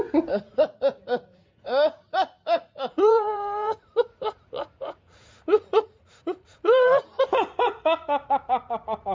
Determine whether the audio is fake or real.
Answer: fake